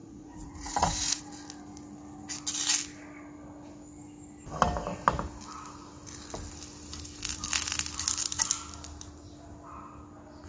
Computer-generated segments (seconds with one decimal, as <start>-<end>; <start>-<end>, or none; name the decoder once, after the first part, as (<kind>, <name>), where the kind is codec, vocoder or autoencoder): 0.0-1.2 (vocoder, Vocos)